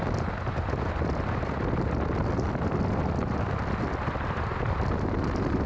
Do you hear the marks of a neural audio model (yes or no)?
no